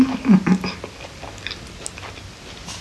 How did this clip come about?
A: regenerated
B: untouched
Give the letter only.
B